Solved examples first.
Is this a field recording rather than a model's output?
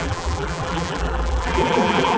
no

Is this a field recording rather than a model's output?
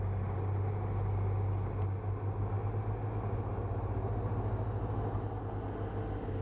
yes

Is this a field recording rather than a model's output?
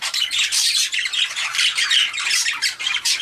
no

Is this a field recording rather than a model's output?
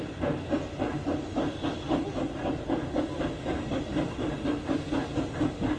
yes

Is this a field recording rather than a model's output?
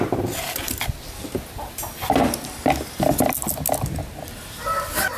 yes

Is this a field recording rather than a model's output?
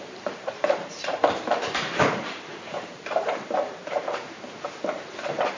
no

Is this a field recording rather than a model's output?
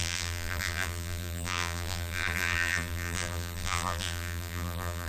no